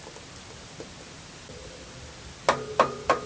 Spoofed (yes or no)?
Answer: no